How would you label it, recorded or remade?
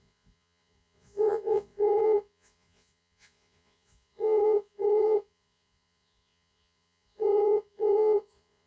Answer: remade